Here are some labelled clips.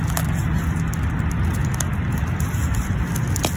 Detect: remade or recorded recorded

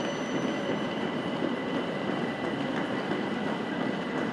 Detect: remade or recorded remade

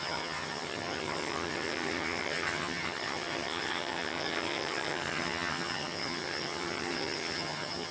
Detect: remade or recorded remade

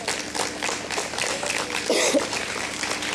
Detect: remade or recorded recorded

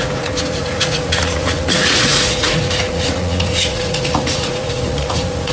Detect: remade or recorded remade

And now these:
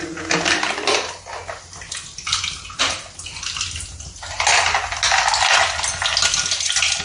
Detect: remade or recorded recorded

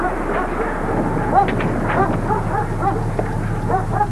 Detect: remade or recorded recorded